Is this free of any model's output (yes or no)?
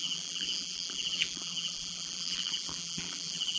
no